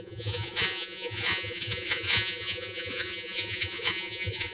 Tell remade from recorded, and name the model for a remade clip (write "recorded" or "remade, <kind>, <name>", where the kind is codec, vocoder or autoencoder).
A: remade, vocoder, Vocos